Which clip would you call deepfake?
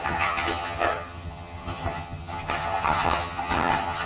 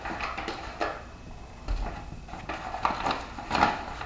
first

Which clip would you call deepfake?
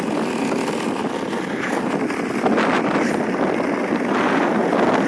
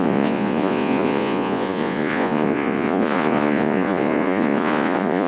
second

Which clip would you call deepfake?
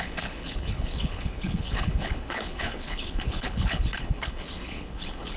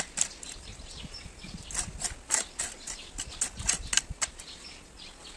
first